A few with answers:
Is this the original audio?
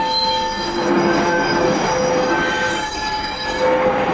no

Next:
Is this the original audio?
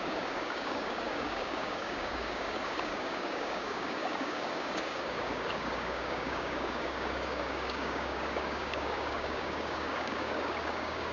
no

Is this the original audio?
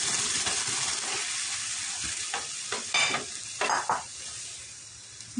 yes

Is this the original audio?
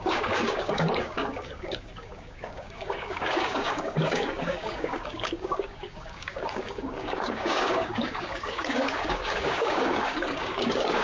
no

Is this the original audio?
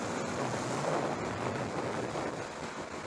yes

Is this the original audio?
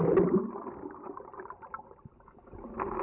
yes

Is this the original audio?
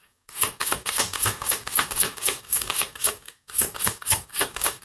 no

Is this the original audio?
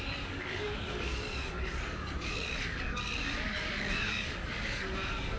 no